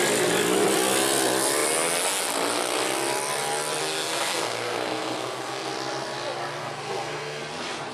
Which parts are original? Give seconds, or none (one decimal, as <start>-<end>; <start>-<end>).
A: 0.0-3.8; 5.7-6.6; 7.4-7.9